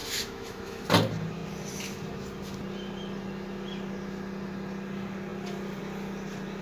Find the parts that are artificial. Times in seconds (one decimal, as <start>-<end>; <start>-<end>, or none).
0.0-0.8